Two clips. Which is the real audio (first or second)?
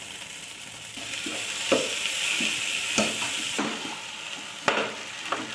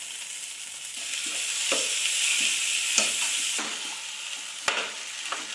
second